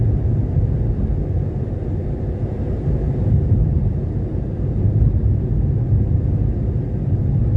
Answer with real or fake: real